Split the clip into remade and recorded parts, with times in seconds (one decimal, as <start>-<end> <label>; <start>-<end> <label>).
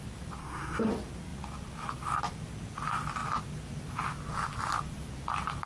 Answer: 0.0-0.4 recorded; 0.4-0.9 remade; 0.9-5.7 recorded